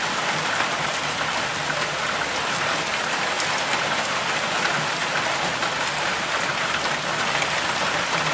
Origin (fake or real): real